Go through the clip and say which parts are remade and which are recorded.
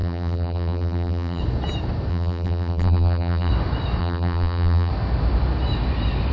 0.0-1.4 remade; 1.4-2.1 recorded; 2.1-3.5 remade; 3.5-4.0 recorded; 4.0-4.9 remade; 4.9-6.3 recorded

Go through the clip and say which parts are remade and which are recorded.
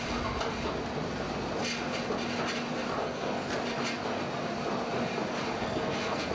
0.0-3.0 recorded; 3.0-3.5 remade; 3.5-5.6 recorded; 5.6-6.3 remade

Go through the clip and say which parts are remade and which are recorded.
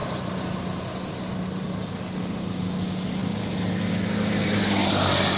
0.0-5.4 recorded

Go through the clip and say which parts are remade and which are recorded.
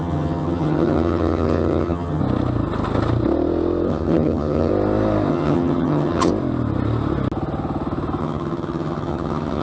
0.0-2.2 remade; 2.2-3.9 recorded; 3.9-4.7 remade; 4.7-5.3 recorded; 5.3-6.3 remade; 6.3-8.2 recorded; 8.2-9.6 remade